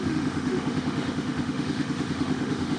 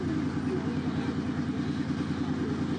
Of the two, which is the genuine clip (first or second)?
second